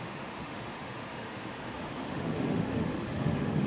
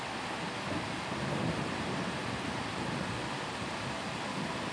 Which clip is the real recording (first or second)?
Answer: second